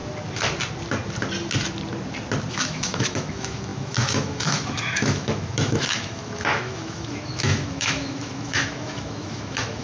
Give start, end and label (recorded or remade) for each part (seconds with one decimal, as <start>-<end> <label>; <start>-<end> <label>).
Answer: 0.0-2.5 recorded; 2.5-9.8 remade